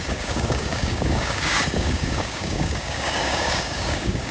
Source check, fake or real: fake